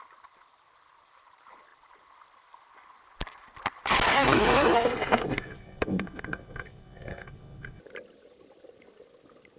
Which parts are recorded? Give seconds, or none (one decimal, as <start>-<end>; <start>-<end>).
0.0-4.1; 7.8-9.6